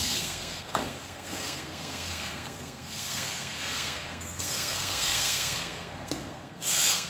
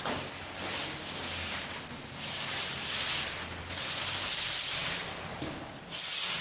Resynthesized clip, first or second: first